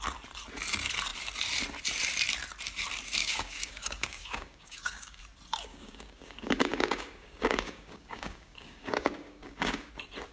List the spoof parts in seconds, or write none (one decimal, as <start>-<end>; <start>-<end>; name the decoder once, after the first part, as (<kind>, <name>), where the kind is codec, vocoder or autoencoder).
3.2-5.2 (codec, DAC); 5.7-9.9